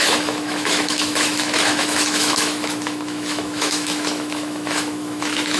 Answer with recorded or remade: remade